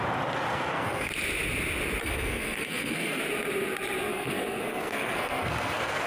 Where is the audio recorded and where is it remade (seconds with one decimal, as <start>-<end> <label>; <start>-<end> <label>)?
0.0-0.5 recorded; 0.5-1.1 remade; 1.1-2.0 recorded; 2.0-3.2 remade; 3.2-4.1 recorded; 4.1-6.1 remade

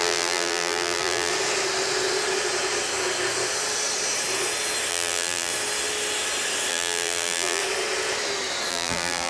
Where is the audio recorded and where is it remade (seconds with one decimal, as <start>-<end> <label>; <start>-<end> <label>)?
0.0-1.3 remade; 1.3-4.9 recorded; 4.9-5.5 remade; 5.5-6.7 recorded; 6.7-7.6 remade; 7.6-8.7 recorded; 8.7-9.3 remade

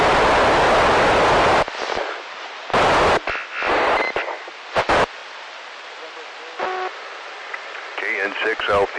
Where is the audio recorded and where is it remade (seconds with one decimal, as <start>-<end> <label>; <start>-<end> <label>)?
0.0-9.0 recorded

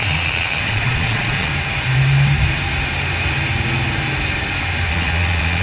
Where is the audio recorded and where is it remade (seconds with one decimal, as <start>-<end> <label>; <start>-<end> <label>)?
0.0-1.5 remade; 1.5-4.9 recorded; 4.9-5.6 remade

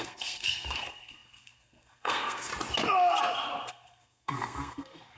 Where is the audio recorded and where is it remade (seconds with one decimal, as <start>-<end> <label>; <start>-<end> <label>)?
0.0-2.5 remade; 2.5-3.7 recorded; 3.7-5.2 remade

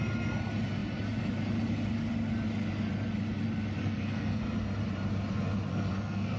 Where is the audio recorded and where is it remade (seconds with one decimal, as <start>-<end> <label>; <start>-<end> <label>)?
0.0-3.8 recorded; 3.8-4.4 remade; 4.4-5.7 recorded; 5.7-6.4 remade

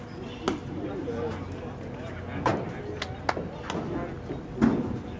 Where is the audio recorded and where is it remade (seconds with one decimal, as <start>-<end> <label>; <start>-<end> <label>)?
0.0-5.2 recorded

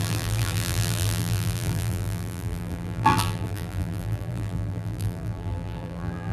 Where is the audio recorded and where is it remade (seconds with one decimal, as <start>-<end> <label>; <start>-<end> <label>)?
0.0-6.3 remade